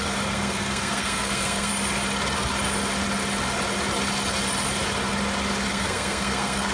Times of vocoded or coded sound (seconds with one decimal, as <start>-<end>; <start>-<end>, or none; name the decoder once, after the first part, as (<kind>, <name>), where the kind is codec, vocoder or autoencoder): 0.0-1.7 (codec, SNAC); 5.7-6.7